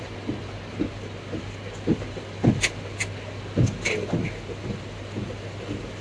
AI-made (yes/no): no